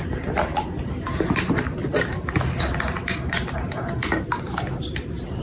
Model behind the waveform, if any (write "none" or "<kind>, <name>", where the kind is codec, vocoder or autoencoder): none